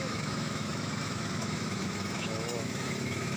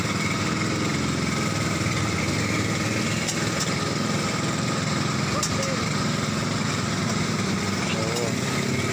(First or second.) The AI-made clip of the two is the first